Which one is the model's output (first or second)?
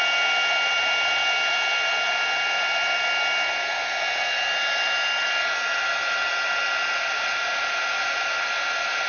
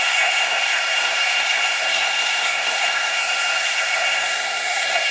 second